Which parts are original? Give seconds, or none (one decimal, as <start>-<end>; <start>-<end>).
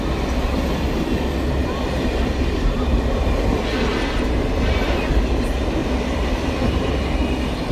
0.0-1.6; 3.2-3.9; 5.1-5.8; 6.9-7.7